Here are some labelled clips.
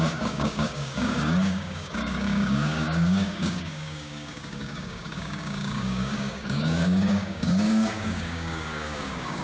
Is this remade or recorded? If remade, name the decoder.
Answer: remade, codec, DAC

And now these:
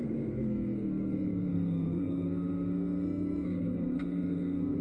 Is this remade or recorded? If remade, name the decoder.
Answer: remade, codec, SNAC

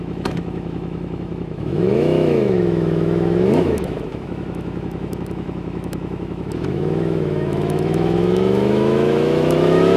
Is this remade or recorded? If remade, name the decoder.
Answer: remade, autoencoder, DAC-VAE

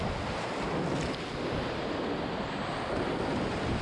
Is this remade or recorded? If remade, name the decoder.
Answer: recorded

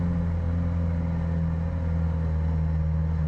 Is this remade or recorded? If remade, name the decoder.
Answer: recorded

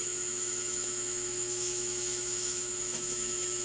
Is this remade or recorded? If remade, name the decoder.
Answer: remade, autoencoder, DAC-VAE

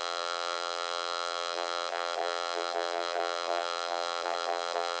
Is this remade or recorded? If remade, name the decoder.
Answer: remade, vocoder, BigVGAN v2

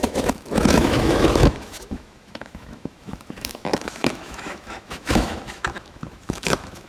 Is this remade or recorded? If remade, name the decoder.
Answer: remade, autoencoder, DAC-VAE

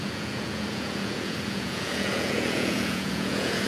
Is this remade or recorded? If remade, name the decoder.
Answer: remade, vocoder, Vocos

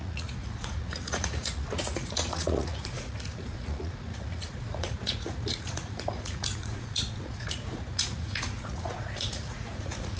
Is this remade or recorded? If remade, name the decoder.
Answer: remade, vocoder, Vocos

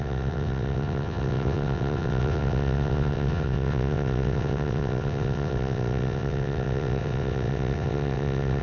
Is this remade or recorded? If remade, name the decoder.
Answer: remade, vocoder, WaveNeXt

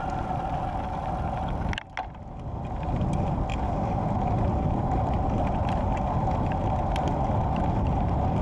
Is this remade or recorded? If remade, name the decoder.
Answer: recorded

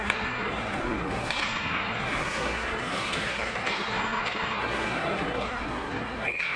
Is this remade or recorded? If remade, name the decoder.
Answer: remade, codec, SNAC